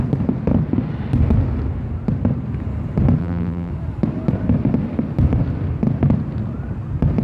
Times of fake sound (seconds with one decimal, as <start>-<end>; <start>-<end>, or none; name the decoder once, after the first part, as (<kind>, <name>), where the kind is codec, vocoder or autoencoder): 3.2-3.7 (vocoder, BigVGAN v2)